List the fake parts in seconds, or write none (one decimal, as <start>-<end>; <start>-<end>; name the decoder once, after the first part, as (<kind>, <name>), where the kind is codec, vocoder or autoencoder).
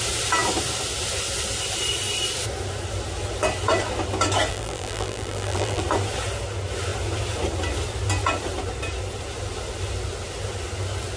4.5-5.8 (vocoder, BigVGAN v2)